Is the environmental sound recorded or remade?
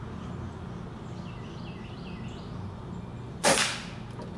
recorded